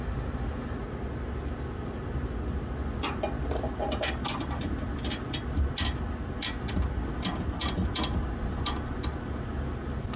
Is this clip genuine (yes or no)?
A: yes